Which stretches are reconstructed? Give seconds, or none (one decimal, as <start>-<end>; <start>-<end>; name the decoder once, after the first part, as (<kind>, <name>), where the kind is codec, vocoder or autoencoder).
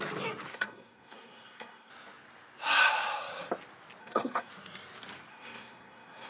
0.5-1.9 (codec, SNAC); 4.0-4.5; 5.3-6.3